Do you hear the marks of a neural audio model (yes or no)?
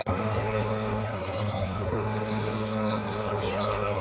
yes